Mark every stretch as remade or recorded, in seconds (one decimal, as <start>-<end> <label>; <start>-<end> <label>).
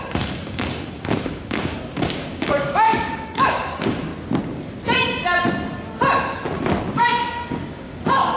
0.0-4.1 remade; 4.1-6.8 recorded; 6.8-8.4 remade